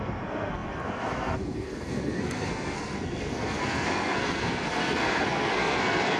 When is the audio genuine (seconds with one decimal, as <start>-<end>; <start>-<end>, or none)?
none